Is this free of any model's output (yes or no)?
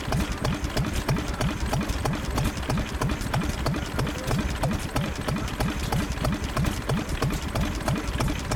yes